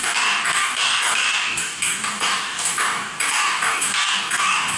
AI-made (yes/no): yes